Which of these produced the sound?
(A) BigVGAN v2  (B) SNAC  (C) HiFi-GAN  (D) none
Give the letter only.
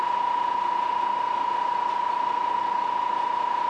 D